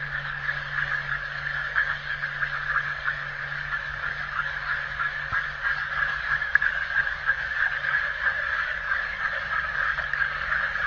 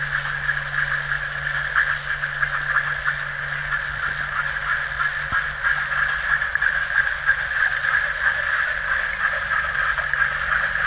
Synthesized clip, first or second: first